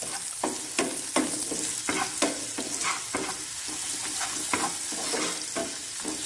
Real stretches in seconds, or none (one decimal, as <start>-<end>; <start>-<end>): 0.0-6.3